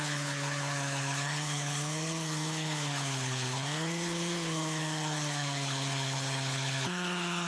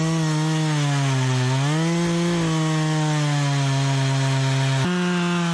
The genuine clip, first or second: second